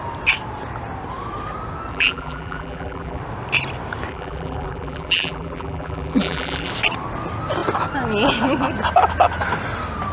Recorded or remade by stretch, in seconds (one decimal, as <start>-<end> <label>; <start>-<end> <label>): 0.0-1.9 recorded; 1.9-3.2 remade; 3.2-4.1 recorded; 4.1-6.7 remade; 6.7-10.1 recorded